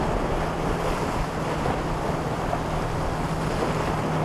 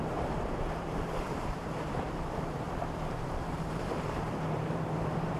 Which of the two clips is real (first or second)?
first